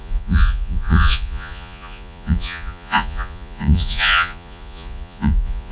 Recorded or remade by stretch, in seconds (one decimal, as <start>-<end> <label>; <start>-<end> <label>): 0.0-5.7 remade